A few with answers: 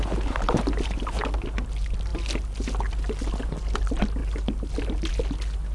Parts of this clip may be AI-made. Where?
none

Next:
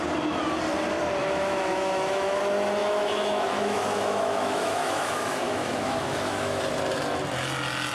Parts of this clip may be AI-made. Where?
1.2-2.4 (autoencoder, DAC-VAE); 2.8-6.6

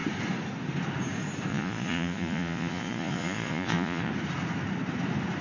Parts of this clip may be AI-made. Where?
1.5-4.1 (vocoder, Vocos)

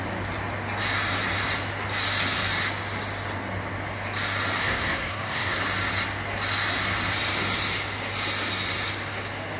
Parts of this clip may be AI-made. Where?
4.6-5.6 (codec, SNAC)

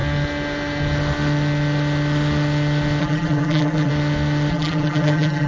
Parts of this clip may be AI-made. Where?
3.0-3.9 (vocoder, BigVGAN v2); 4.5-5.5

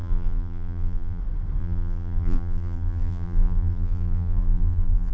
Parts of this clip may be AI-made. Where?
0.0-1.2 (vocoder, BigVGAN v2); 1.6-5.1

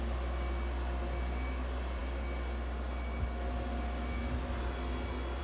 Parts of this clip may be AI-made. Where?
none

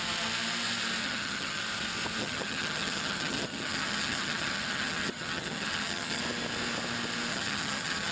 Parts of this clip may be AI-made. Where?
1.0-1.6 (vocoder, HiFi-GAN); 2.2-6.2; 7.3-8.1